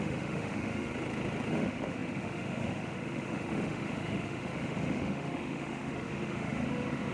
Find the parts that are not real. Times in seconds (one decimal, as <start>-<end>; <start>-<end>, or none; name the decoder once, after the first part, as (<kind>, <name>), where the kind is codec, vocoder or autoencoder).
0.0-0.9 (autoencoder, DAC-VAE); 1.5-7.1